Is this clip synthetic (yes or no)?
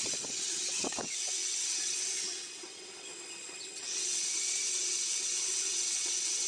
yes